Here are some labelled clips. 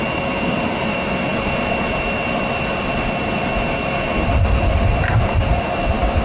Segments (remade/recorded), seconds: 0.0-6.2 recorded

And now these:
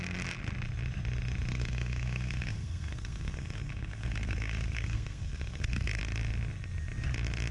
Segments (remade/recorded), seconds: 0.0-1.5 recorded; 1.5-6.0 remade; 6.0-7.5 recorded

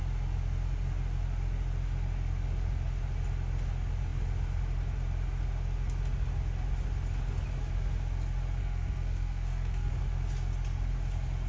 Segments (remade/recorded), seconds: 0.0-8.6 recorded; 8.6-9.9 remade; 9.9-11.5 recorded

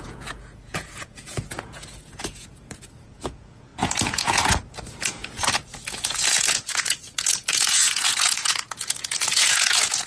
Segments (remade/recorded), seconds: 0.0-10.1 remade

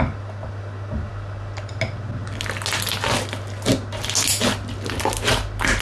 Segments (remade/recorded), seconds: 0.0-5.8 recorded

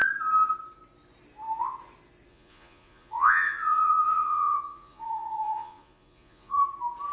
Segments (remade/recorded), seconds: 0.0-2.3 recorded; 2.3-6.6 remade; 6.6-7.1 recorded

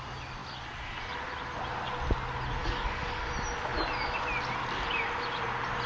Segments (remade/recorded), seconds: 0.0-2.6 recorded; 2.6-3.3 remade; 3.3-5.9 recorded